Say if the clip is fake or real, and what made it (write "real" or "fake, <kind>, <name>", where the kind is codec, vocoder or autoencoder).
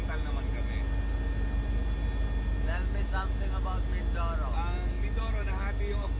real